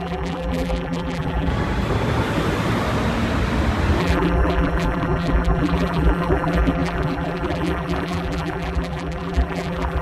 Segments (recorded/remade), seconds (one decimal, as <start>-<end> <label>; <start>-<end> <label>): 0.0-1.5 remade; 1.5-4.0 recorded; 4.0-10.0 remade